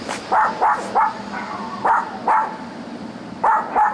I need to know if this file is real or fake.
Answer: real